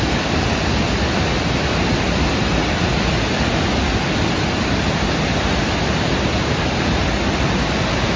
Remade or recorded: recorded